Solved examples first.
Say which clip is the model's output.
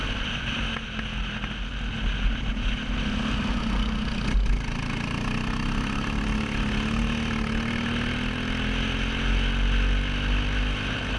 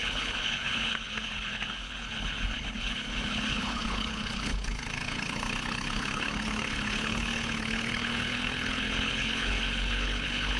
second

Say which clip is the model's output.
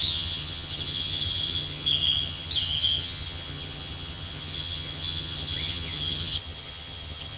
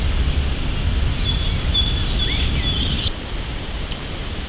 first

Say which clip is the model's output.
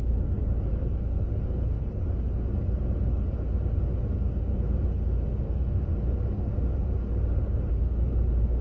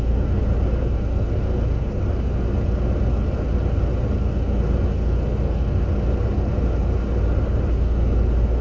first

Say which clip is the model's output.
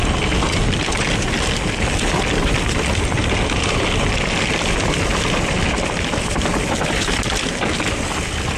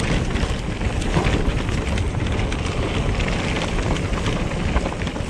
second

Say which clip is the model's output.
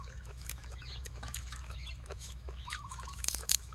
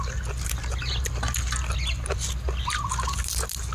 first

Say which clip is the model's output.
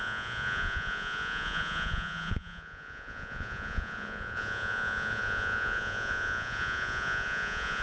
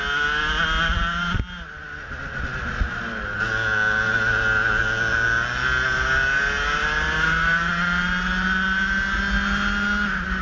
first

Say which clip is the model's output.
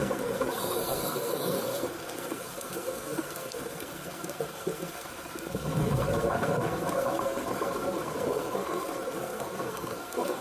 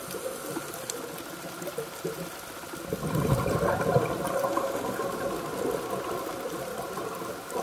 first